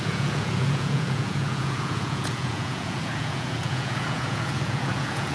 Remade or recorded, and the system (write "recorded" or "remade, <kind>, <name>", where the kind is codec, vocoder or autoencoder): remade, vocoder, Vocos